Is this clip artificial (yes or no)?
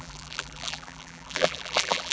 yes